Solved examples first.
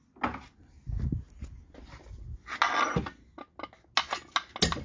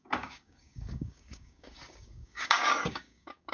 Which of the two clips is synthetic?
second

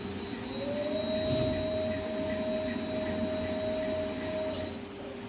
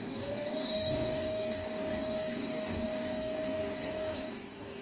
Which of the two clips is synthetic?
second